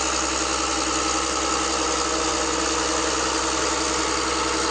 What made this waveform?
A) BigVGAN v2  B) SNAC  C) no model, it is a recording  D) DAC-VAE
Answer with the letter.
C